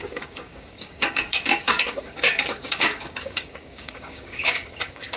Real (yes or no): no